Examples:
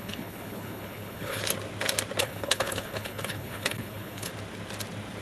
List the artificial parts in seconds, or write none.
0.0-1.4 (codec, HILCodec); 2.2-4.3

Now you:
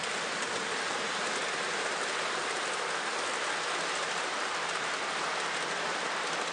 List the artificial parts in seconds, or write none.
none

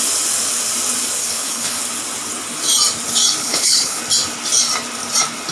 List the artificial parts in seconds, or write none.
1.2-1.8 (codec, HILCodec); 3.4-4.0

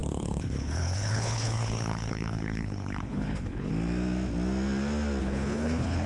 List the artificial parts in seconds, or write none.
0.0-3.7 (codec, HILCodec); 5.2-6.1

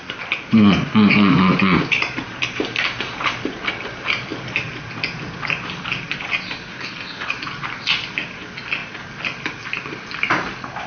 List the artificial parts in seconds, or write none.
6.7-7.3 (codec, HILCodec)

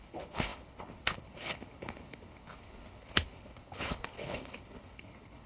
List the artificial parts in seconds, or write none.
0.0-5.5 (codec, HILCodec)

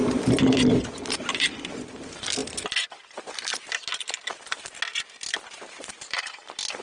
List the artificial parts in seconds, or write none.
none